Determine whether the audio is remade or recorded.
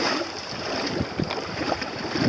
recorded